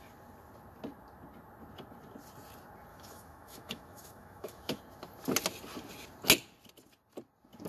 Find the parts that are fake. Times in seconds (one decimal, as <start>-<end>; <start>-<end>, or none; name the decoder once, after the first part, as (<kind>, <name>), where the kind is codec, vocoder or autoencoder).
2.9-4.8 (autoencoder, DAC-VAE)